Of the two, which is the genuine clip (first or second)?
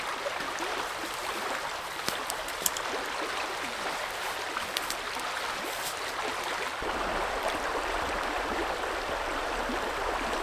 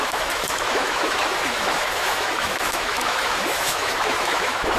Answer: first